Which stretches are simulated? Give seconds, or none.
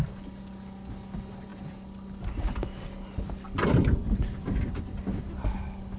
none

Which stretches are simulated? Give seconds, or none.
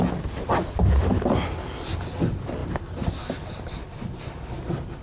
none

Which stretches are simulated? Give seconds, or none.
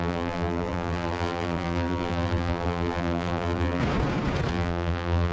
0.0-3.8 (vocoder, BigVGAN v2); 4.5-5.3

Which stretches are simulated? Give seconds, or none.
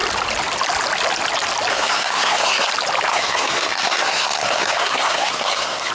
1.7-2.7 (codec, SNAC); 3.1-5.9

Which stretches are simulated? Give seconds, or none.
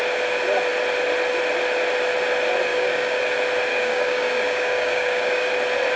2.7-3.2 (codec, DAC); 3.7-5.5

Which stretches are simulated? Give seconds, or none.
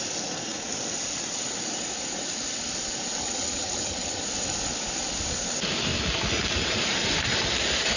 3.2-4.2 (vocoder, HiFi-GAN)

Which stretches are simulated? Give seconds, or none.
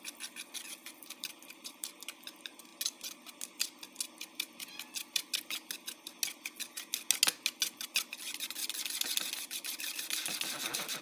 0.8-1.9 (vocoder, BigVGAN v2)